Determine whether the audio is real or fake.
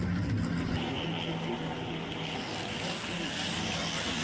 real